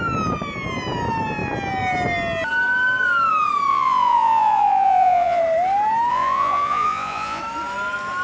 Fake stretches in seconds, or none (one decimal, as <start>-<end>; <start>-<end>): 3.7-5.4; 6.1-7.4